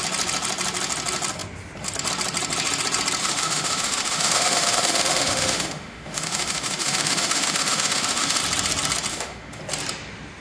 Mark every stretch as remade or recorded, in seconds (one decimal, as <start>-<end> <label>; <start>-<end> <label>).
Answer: 0.0-3.2 recorded; 3.2-8.4 remade; 8.4-9.1 recorded; 9.1-9.6 remade; 9.6-10.4 recorded